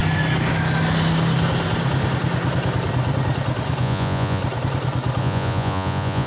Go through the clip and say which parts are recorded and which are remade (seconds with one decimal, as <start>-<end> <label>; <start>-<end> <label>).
0.0-3.8 recorded; 3.8-4.4 remade; 4.4-5.2 recorded; 5.2-6.3 remade